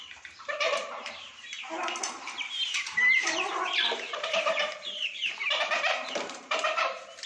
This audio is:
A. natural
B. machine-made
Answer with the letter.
B